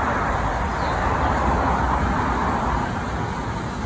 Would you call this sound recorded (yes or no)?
yes